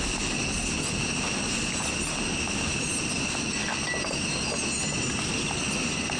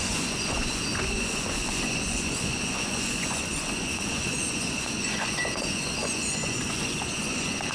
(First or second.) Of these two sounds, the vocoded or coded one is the second